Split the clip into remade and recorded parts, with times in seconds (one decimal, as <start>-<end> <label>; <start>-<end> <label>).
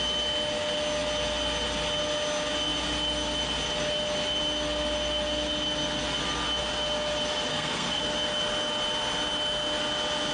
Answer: 0.0-7.5 recorded; 7.5-8.0 remade; 8.0-10.3 recorded